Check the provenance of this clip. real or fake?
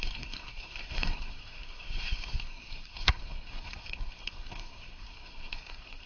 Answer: fake